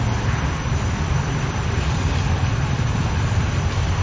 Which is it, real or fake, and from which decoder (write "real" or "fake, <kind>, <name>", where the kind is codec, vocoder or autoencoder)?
real